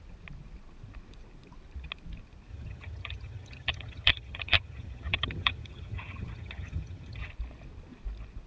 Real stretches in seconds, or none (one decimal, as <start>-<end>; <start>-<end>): 0.0-2.5; 7.3-8.5